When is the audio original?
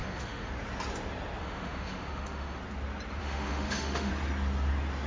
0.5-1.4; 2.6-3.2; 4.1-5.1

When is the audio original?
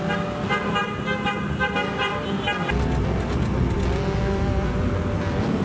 0.0-5.6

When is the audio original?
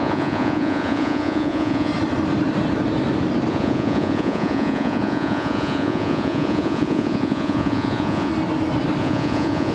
1.9-3.5; 8.3-9.0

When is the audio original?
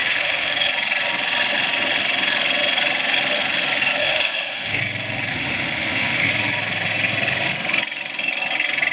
0.7-4.0; 4.8-5.3; 6.3-8.9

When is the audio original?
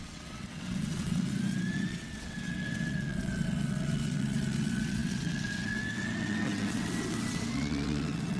none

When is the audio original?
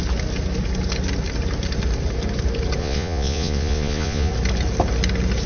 0.0-2.8; 4.3-5.5